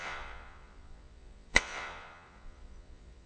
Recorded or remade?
remade